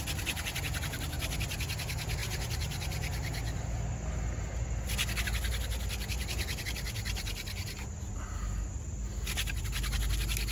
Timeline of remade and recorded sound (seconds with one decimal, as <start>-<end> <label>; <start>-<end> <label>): 0.0-10.5 recorded